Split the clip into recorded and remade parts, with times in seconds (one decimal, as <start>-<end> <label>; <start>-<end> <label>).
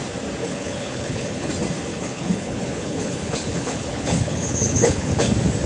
0.0-0.4 recorded; 0.4-1.5 remade; 1.5-1.9 recorded; 1.9-5.3 remade; 5.3-5.7 recorded